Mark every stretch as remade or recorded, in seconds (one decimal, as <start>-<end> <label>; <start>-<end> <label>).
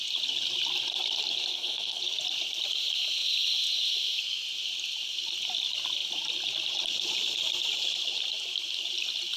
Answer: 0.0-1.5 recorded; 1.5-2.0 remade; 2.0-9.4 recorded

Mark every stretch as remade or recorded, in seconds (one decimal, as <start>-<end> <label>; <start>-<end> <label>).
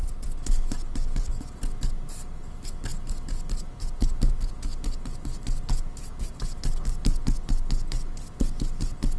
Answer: 0.0-9.2 recorded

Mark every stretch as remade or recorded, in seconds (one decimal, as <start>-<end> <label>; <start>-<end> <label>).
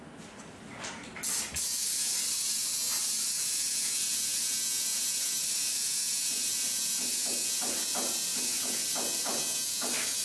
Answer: 0.0-10.2 recorded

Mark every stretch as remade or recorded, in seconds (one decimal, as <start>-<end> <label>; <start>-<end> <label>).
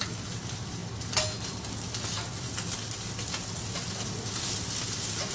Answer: 0.0-5.3 recorded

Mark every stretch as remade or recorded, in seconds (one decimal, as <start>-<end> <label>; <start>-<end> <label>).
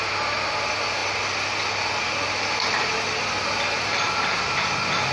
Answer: 0.0-5.1 recorded